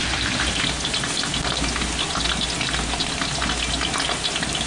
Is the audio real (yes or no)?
yes